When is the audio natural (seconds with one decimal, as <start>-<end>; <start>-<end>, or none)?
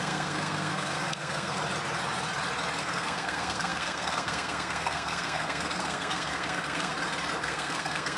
1.6-2.8; 6.9-7.4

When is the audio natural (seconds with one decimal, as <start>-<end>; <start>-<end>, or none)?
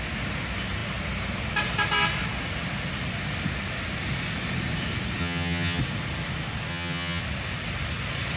0.0-5.2; 5.8-6.7; 7.2-8.4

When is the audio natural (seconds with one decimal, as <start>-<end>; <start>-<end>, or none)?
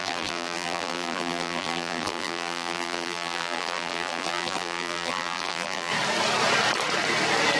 5.9-7.6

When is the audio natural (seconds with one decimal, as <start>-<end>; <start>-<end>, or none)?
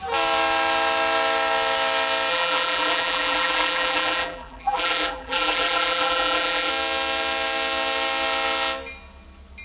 0.0-2.3; 6.7-9.6